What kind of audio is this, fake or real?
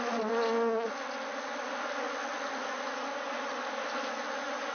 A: real